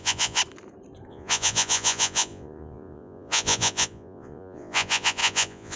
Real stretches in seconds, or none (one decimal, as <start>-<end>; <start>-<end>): 0.4-1.1